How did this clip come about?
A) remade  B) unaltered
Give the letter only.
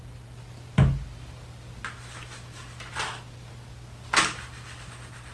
B